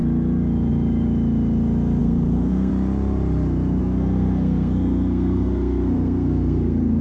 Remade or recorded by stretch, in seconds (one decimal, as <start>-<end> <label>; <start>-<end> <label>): 0.0-2.0 recorded; 2.0-2.7 remade; 2.7-3.8 recorded; 3.8-7.0 remade